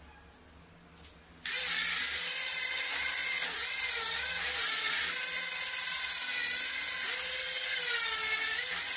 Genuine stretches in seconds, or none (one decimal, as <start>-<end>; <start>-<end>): 0.0-9.0